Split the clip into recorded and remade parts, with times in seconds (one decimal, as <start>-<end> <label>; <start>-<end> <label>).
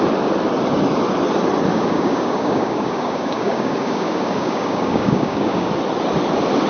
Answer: 0.0-1.7 recorded; 1.7-5.7 remade; 5.7-6.7 recorded